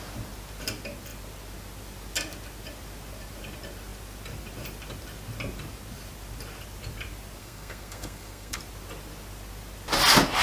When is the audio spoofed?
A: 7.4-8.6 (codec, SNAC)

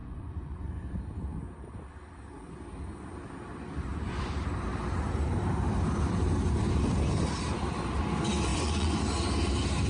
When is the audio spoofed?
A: 0.0-0.7 (vocoder, Vocos); 8.5-9.0

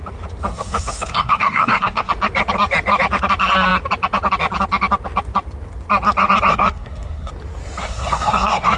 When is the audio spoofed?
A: 0.5-2.1 (codec, SNAC); 6.5-7.3; 7.8-8.8

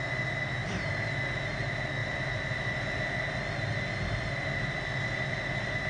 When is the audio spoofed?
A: none

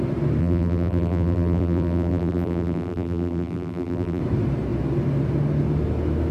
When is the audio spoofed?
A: 0.4-4.2 (vocoder, BigVGAN v2)

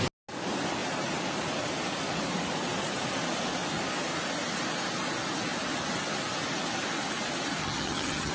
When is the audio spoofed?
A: 7.6-8.3 (vocoder, HiFi-GAN)

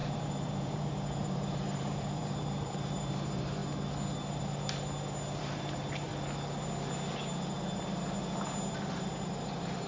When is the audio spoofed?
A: 0.0-3.6 (vocoder, BigVGAN v2); 5.4-6.1; 8.9-9.9

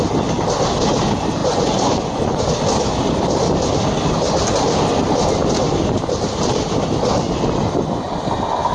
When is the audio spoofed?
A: 1.4-2.4 (vocoder, Vocos)